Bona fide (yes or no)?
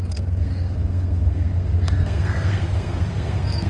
no